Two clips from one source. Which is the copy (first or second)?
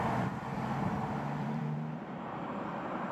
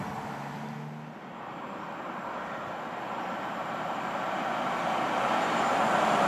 first